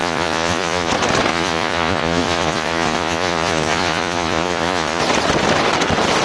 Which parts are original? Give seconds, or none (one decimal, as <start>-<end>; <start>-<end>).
0.9-1.3; 5.0-6.2